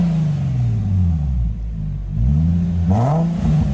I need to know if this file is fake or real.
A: real